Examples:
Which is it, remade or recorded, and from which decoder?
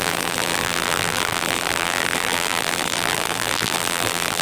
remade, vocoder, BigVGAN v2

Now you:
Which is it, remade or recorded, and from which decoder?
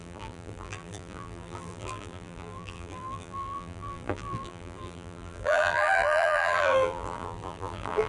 remade, vocoder, BigVGAN v2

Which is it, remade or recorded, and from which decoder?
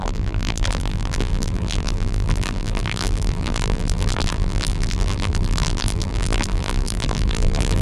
remade, vocoder, BigVGAN v2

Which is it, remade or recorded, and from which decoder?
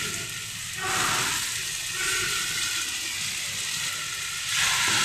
recorded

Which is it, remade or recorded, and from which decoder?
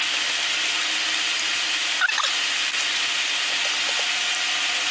recorded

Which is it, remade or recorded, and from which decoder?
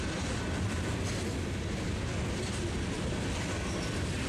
recorded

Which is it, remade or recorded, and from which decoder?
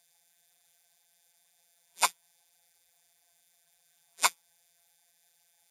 remade, vocoder, BigVGAN v2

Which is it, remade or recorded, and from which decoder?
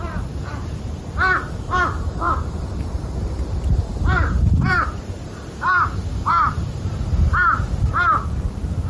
remade, vocoder, BigVGAN v2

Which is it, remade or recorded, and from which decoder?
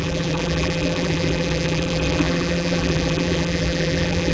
remade, vocoder, BigVGAN v2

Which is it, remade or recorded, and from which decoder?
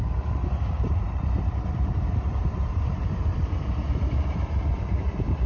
remade, vocoder, BigVGAN v2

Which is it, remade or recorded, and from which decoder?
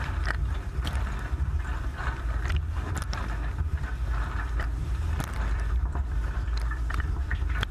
remade, vocoder, BigVGAN v2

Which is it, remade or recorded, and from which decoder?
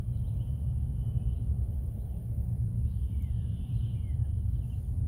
remade, vocoder, BigVGAN v2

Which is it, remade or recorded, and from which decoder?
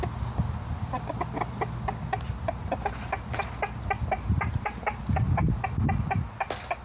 remade, vocoder, BigVGAN v2